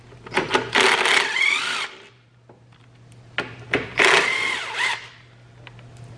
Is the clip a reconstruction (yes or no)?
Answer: no